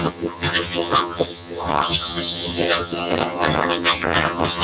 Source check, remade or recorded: remade